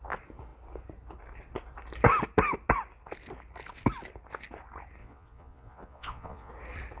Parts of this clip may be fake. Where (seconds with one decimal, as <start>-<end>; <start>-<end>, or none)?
5.0-6.5